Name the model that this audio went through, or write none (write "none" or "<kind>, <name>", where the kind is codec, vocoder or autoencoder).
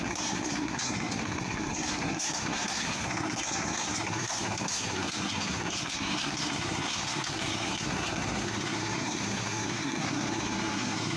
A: codec, SNAC